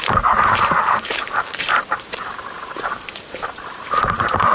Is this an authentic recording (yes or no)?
no